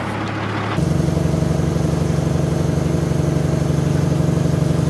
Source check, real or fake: real